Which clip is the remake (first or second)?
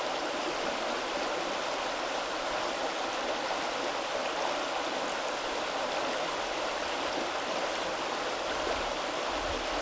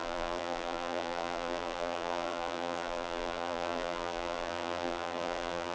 second